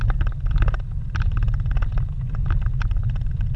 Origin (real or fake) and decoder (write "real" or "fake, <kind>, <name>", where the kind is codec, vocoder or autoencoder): real